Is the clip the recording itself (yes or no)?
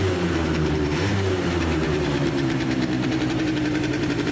no